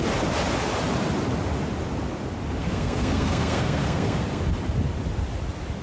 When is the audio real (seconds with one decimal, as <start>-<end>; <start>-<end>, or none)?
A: 0.0-2.6; 4.4-5.8